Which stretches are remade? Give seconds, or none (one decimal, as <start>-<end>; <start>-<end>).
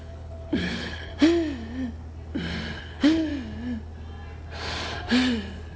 0.0-1.1; 2.8-3.3